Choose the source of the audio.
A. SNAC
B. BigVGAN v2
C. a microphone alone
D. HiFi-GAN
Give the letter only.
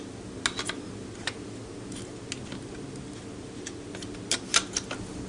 C